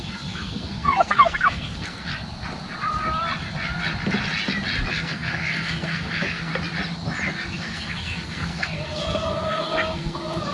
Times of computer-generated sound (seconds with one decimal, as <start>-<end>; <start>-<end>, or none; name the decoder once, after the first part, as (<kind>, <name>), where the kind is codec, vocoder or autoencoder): 0.0-2.1 (codec, SNAC); 4.9-6.5; 7.5-10.5